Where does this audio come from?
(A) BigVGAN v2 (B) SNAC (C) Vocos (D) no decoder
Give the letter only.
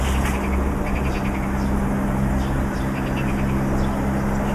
D